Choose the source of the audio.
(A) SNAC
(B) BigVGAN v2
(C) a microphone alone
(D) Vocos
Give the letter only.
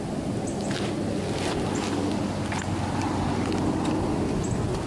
C